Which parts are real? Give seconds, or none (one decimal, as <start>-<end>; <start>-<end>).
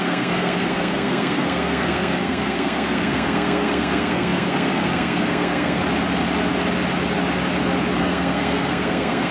5.8-8.0